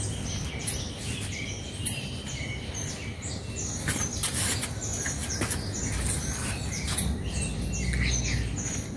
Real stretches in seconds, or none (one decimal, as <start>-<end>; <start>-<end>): 0.0-9.0